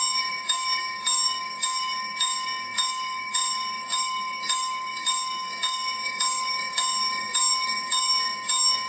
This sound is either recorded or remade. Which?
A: remade